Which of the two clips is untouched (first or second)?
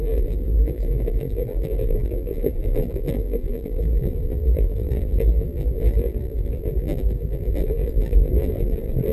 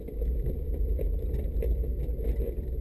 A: second